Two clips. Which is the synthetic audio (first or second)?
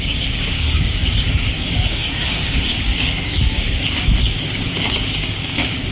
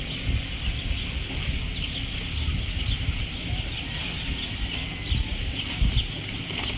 first